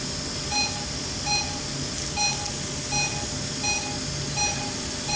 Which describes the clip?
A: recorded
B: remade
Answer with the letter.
A